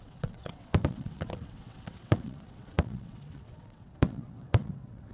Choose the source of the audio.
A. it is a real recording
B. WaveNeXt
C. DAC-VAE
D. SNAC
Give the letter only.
B